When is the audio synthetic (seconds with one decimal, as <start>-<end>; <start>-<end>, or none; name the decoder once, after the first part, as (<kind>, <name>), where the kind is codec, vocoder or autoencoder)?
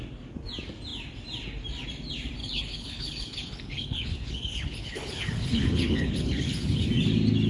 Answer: 2.4-6.9 (codec, HILCodec)